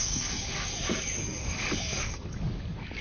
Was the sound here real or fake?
fake